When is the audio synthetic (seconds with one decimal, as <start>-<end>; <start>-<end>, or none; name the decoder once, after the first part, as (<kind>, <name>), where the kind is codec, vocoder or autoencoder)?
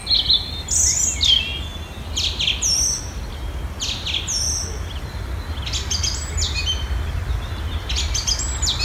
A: none